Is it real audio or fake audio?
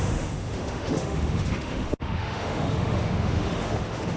fake